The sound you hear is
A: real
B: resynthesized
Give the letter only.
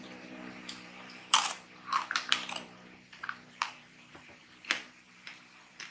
B